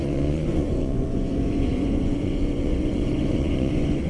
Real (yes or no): no